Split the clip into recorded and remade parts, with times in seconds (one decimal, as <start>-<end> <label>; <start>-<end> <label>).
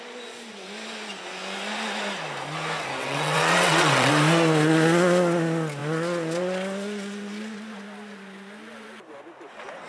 0.0-3.0 recorded; 3.0-4.1 remade; 4.1-9.9 recorded